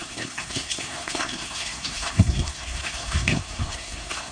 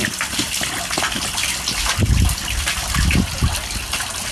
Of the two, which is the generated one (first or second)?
first